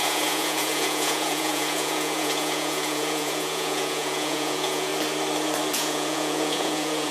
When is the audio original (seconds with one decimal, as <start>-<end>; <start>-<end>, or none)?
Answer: 4.9-5.7